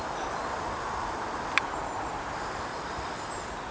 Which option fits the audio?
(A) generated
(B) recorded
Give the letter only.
B